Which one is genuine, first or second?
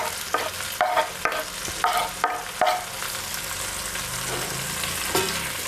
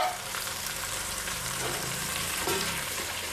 first